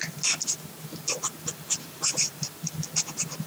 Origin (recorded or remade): remade